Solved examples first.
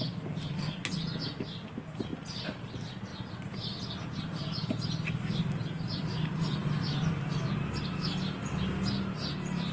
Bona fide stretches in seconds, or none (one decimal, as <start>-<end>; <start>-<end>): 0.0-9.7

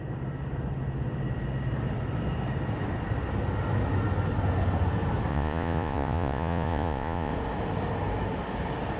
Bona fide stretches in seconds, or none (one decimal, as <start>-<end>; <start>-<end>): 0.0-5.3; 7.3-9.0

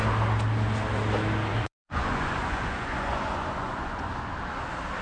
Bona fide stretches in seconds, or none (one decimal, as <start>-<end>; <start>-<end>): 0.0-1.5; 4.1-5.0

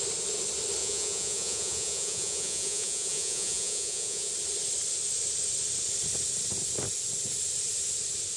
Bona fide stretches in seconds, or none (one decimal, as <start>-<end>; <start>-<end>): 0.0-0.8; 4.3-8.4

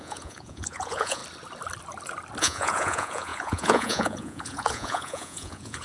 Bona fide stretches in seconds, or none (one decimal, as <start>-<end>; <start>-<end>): 1.2-2.4

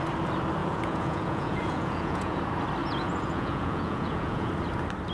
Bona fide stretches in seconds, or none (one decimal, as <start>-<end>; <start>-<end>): 0.0-0.6; 2.4-2.8; 4.5-5.1

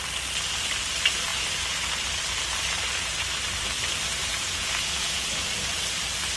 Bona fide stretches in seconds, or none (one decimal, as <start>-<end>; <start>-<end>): 0.0-4.2; 5.5-6.4

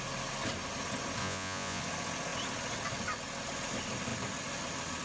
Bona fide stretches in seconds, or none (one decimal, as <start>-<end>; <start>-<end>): 0.0-1.2; 1.8-5.0